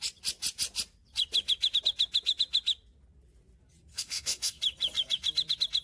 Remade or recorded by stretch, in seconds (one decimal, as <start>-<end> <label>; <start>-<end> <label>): 0.0-3.9 recorded; 3.9-4.6 remade; 4.6-5.8 recorded